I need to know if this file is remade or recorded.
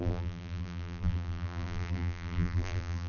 remade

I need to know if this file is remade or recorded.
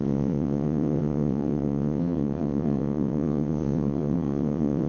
remade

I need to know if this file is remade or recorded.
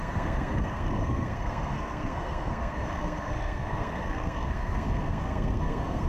remade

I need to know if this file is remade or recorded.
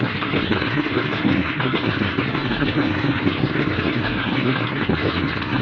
remade